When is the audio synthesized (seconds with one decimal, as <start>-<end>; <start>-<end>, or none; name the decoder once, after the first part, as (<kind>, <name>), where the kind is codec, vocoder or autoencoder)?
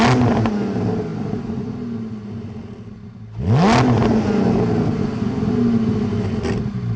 none